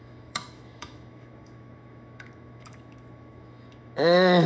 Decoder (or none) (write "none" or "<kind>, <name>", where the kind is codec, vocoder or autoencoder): autoencoder, DAC-VAE